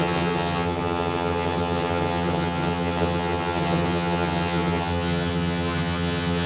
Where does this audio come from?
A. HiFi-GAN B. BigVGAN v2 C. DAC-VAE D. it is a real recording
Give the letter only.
A